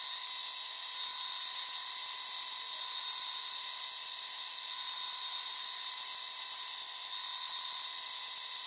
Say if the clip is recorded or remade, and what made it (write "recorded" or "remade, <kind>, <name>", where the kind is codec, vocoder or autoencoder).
recorded